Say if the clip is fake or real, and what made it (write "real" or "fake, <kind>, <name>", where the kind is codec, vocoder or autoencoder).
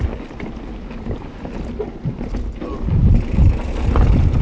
real